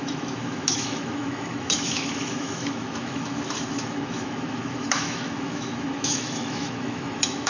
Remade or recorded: remade